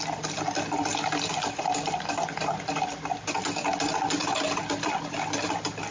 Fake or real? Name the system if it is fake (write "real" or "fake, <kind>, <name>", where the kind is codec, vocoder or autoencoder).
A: real